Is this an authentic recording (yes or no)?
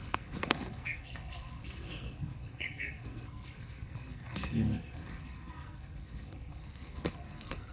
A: no